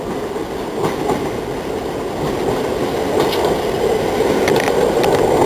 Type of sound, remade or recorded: recorded